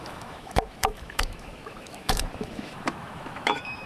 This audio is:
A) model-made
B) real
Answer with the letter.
A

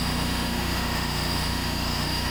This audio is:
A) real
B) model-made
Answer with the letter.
B